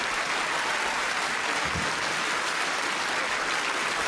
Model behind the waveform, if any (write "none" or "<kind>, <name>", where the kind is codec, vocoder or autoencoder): none